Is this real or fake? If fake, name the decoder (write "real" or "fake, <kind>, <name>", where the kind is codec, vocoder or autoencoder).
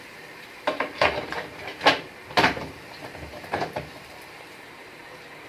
fake, vocoder, BigVGAN v2